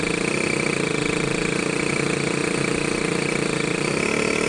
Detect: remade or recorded recorded